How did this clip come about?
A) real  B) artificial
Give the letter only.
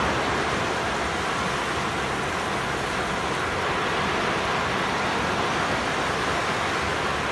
A